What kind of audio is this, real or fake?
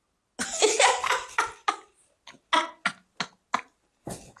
real